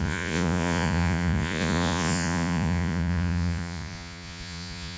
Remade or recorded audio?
remade